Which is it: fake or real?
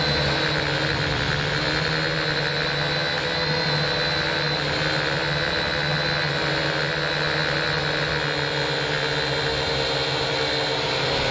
real